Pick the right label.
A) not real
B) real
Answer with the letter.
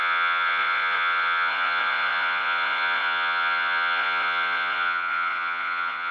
A